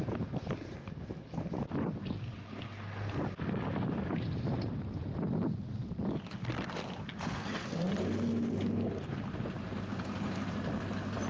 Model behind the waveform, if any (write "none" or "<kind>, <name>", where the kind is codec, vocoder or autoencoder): none